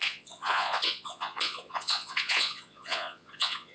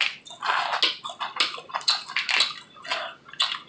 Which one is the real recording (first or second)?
second